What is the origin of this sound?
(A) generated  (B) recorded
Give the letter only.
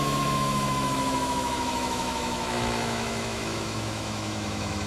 A